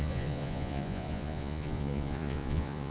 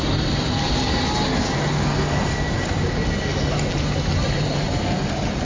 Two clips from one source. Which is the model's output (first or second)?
first